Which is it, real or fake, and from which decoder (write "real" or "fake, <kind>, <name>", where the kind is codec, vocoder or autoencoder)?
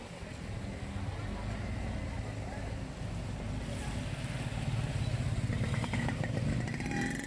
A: real